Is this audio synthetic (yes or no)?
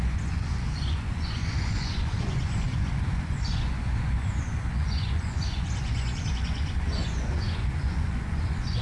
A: yes